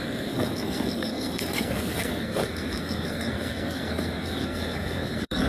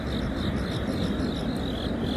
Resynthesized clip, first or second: first